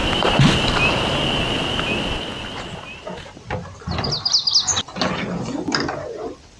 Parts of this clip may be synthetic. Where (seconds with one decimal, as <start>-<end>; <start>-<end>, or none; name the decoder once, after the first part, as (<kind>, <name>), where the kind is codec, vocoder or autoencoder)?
none